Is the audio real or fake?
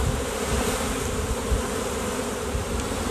fake